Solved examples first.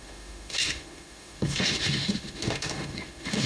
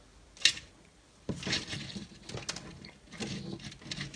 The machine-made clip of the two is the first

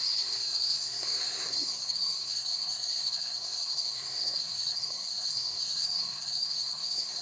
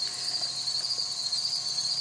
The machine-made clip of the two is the first